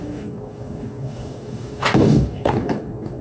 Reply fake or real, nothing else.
fake